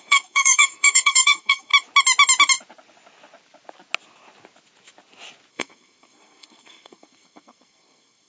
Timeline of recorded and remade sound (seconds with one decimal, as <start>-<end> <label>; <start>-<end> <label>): 0.0-1.7 remade; 1.7-5.5 recorded; 5.5-8.3 remade